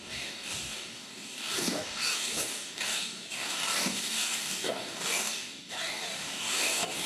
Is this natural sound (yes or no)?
no